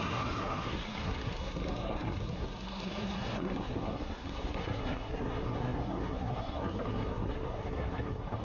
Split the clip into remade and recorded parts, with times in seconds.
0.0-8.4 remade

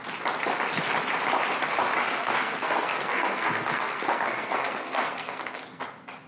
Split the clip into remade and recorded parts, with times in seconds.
0.0-2.0 recorded; 2.0-5.8 remade; 5.8-6.3 recorded

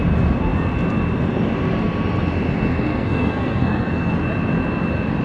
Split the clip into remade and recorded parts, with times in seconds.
0.0-2.9 recorded; 2.9-4.1 remade; 4.1-5.2 recorded

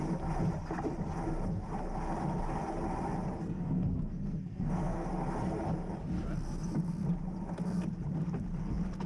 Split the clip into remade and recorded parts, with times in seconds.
0.0-3.4 recorded; 3.4-5.1 remade; 5.1-9.1 recorded

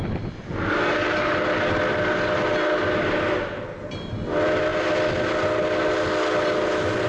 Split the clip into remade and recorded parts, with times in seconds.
0.0-7.1 recorded